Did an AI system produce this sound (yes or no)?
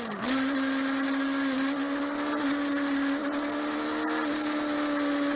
no